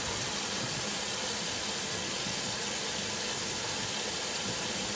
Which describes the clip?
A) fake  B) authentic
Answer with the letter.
A